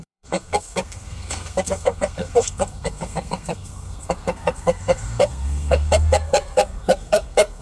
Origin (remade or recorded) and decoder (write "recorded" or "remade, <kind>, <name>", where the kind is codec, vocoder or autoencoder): remade, codec, SNAC